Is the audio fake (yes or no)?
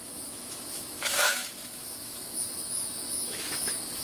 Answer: yes